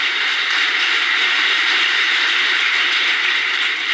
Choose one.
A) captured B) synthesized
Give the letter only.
B